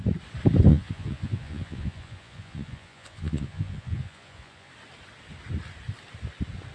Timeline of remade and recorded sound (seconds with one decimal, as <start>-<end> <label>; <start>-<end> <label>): 0.0-0.7 recorded; 0.7-4.7 remade; 4.7-6.7 recorded